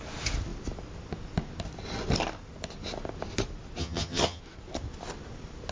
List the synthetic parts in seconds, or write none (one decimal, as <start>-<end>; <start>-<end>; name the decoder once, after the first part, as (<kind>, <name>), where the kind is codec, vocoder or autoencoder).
3.8-4.4 (vocoder, HiFi-GAN)